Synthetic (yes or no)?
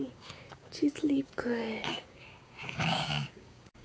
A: yes